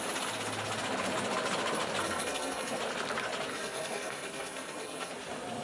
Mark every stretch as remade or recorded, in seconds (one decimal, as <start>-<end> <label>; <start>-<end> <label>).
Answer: 0.0-2.0 recorded; 2.0-2.8 remade; 2.8-3.5 recorded; 3.5-5.1 remade; 5.1-5.6 recorded